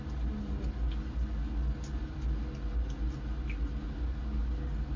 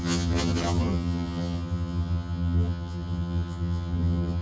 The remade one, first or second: second